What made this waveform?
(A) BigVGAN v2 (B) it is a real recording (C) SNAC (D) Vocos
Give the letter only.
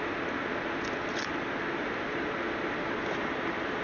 B